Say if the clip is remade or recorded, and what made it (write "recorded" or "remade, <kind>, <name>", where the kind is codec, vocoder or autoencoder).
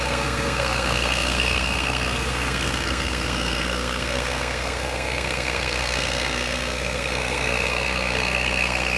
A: remade, codec, SNAC